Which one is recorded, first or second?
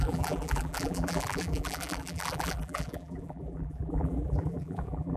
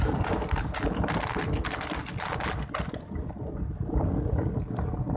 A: second